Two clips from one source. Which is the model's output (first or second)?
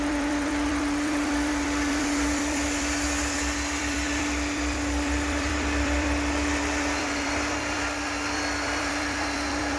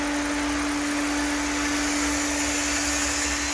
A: first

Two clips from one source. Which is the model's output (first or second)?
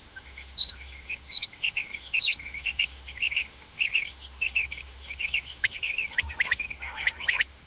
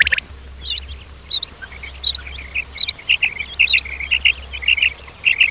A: first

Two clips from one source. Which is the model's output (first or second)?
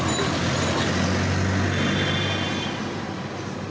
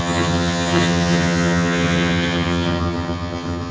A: second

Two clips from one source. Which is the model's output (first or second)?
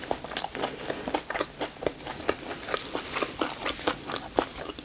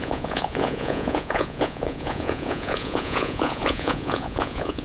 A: second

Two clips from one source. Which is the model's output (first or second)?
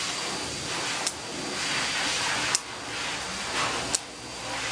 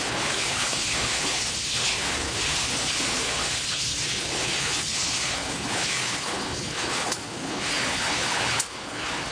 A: second